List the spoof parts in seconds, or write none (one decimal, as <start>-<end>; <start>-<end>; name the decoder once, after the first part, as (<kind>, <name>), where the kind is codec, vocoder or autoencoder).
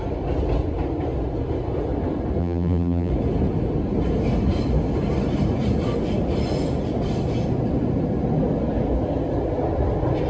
2.4-3.1 (vocoder, BigVGAN v2)